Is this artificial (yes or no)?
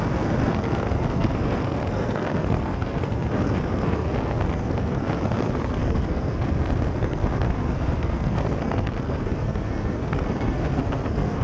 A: yes